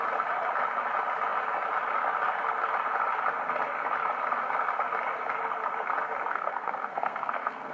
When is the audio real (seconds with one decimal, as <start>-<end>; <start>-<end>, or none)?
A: 0.0-6.3